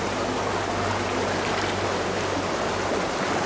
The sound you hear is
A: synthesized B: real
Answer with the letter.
B